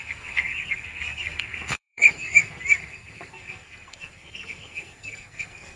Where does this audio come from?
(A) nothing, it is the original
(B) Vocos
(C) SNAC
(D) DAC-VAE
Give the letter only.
C